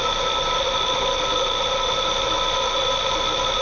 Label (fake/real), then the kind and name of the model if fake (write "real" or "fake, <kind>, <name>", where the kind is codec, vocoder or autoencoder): real